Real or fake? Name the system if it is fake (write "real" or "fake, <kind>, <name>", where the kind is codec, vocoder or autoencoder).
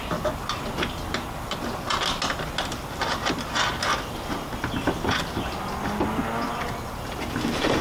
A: real